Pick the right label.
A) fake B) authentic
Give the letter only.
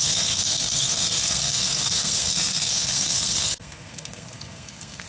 A